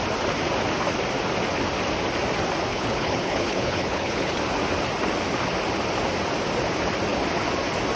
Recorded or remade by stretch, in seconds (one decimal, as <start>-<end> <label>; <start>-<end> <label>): 0.0-2.7 recorded; 2.7-4.4 remade; 4.4-8.0 recorded